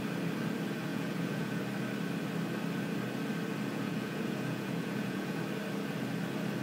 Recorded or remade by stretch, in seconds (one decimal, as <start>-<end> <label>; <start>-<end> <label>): 0.0-0.9 recorded; 0.9-1.6 remade; 1.6-3.7 recorded; 3.7-5.4 remade; 5.4-6.6 recorded